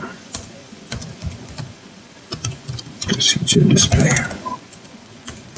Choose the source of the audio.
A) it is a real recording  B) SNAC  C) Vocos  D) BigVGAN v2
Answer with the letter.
C